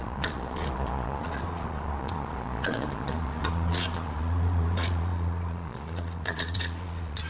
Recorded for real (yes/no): no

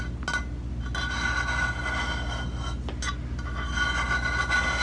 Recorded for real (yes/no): yes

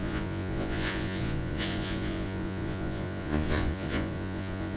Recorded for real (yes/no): no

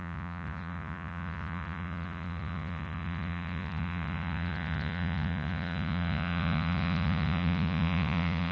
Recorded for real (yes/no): no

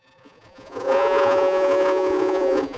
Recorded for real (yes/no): no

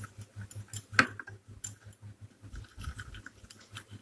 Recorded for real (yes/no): yes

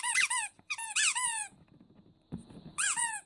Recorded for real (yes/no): no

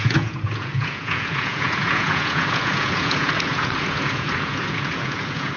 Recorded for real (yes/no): no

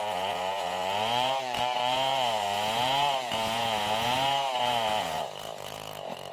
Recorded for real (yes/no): no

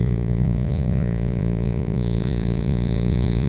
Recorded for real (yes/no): no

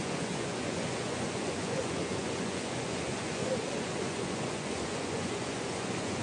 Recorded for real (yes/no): no